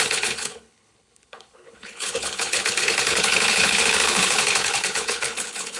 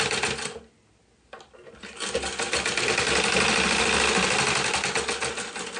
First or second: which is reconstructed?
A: first